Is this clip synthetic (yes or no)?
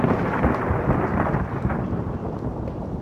no